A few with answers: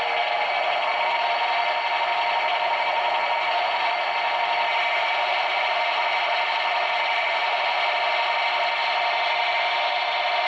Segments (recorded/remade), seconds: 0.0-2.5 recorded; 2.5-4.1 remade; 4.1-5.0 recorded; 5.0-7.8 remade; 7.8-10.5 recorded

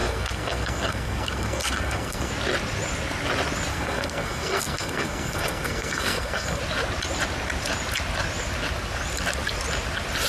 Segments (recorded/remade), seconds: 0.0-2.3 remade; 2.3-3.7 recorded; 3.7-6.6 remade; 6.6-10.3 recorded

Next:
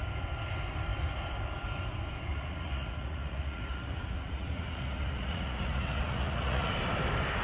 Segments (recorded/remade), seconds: 0.0-2.3 recorded; 2.3-6.7 remade; 6.7-7.4 recorded